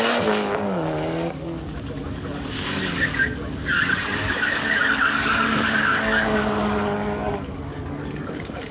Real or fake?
fake